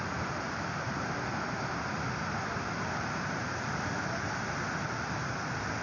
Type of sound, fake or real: real